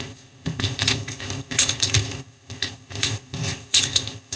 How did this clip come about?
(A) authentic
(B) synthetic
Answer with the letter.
B